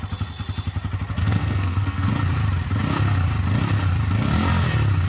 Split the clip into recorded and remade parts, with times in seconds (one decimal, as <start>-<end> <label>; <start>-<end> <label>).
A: 0.0-1.2 recorded; 1.2-2.1 remade; 2.1-5.1 recorded